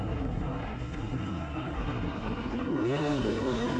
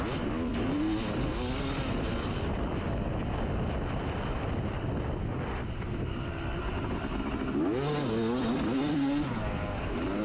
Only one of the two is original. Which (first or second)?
second